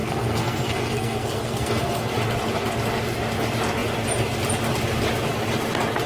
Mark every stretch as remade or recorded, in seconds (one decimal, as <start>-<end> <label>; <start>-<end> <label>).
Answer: 0.0-2.0 remade; 2.0-6.1 recorded